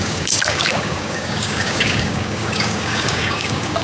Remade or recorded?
remade